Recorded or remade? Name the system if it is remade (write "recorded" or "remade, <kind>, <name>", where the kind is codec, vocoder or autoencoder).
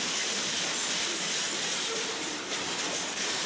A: remade, vocoder, BigVGAN v2